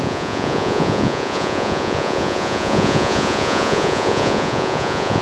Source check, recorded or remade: remade